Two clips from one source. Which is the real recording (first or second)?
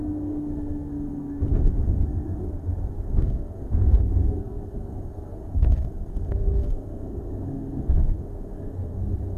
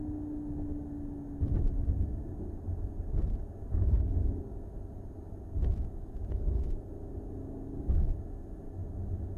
second